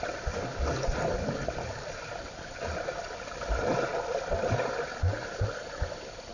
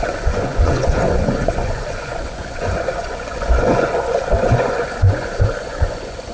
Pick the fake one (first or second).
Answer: second